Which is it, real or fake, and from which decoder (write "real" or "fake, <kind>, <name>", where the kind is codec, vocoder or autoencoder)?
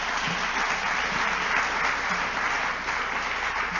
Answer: real